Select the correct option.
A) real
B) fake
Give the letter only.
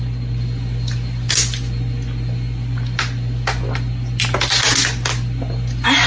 A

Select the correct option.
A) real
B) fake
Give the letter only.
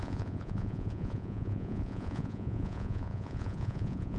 B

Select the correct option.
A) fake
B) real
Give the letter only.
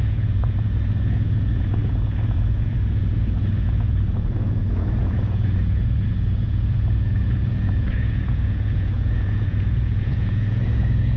A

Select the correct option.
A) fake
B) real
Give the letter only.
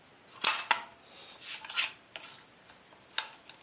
B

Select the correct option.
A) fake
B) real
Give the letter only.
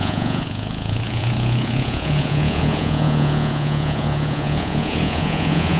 A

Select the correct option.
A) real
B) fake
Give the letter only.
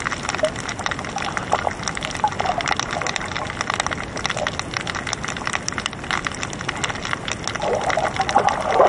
A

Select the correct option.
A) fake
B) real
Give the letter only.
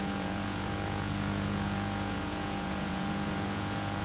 A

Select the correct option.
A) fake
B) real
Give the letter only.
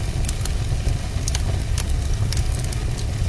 B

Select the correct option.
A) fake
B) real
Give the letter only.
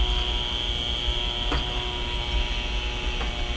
B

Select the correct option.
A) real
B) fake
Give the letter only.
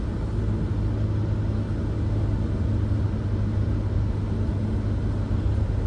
A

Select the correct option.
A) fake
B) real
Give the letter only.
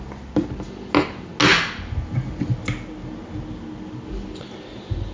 B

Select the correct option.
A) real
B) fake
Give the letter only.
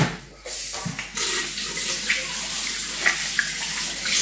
A